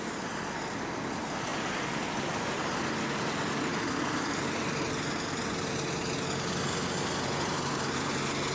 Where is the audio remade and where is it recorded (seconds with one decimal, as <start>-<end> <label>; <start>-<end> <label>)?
0.0-8.5 recorded

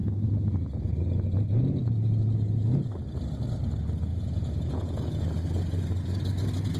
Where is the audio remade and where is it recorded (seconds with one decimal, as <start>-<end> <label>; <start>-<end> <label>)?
0.0-0.9 remade; 0.9-4.1 recorded; 4.1-5.2 remade; 5.2-6.8 recorded

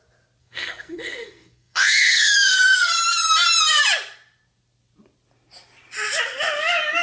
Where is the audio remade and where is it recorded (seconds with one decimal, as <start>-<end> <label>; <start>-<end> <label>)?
0.0-0.4 recorded; 0.4-2.9 remade; 2.9-7.0 recorded

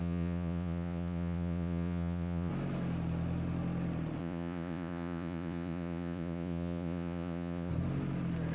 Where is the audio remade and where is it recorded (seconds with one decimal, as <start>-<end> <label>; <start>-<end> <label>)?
0.0-2.5 remade; 2.5-4.2 recorded; 4.2-7.7 remade; 7.7-8.5 recorded

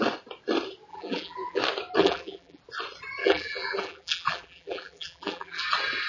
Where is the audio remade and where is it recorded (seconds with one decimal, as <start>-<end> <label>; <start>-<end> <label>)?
0.0-0.9 recorded; 0.9-1.6 remade; 1.6-2.0 recorded; 2.0-2.6 remade; 2.6-3.2 recorded; 3.2-5.6 remade; 5.6-6.1 recorded

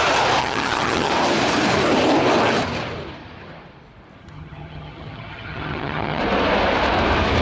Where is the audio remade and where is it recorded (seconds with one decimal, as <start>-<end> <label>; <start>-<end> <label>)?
0.0-0.4 recorded; 0.4-1.1 remade; 1.1-4.2 recorded; 4.2-6.2 remade; 6.2-7.4 recorded

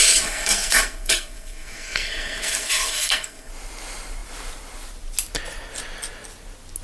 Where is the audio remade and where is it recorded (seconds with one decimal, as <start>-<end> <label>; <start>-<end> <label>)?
0.0-3.5 remade; 3.5-6.8 recorded